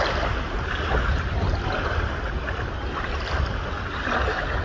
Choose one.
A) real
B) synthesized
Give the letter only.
A